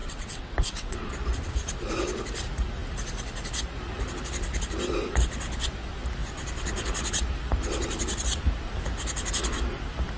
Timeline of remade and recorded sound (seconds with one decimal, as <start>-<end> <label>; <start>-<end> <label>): 0.0-1.1 remade; 1.1-10.2 recorded